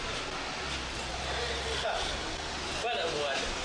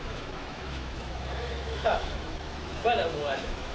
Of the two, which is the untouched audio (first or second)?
first